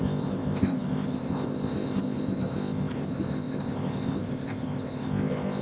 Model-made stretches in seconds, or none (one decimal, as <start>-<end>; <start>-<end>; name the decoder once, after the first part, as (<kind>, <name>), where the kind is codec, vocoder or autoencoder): 0.0-5.6 (codec, ZipCodec)